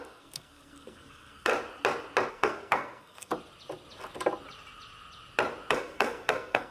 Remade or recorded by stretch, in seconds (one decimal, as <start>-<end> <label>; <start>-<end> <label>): 0.0-1.5 remade; 1.5-2.3 recorded; 2.3-3.3 remade; 3.3-5.7 recorded; 5.7-6.7 remade